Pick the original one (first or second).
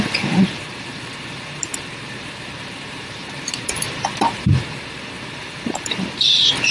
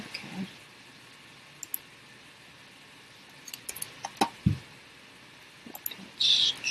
second